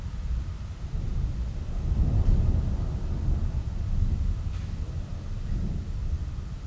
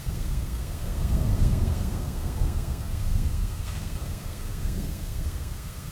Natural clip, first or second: first